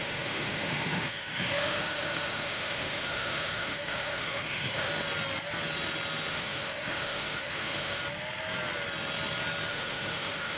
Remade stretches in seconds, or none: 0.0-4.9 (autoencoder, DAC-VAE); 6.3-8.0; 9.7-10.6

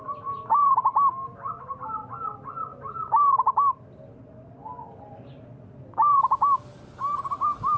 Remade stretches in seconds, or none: none

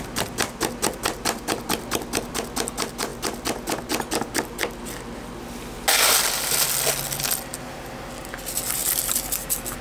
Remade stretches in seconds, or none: 8.8-9.3 (vocoder, BigVGAN v2)